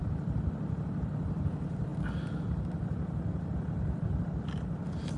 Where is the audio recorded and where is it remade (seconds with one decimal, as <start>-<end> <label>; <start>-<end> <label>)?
0.0-5.2 recorded